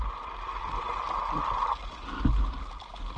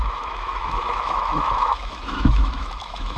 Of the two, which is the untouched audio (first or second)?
first